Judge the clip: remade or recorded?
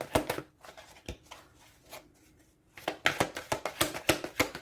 recorded